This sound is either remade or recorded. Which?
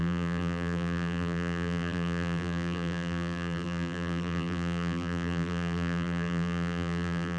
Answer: remade